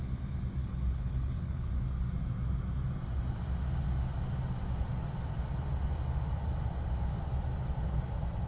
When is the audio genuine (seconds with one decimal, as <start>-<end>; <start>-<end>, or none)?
0.0-0.6; 1.7-8.5

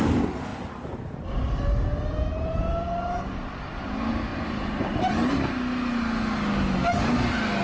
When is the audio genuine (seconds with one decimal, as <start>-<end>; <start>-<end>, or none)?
0.0-7.6